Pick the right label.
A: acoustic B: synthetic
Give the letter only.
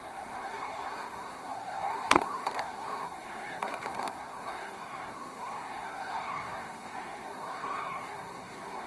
B